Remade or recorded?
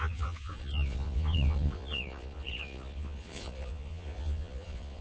remade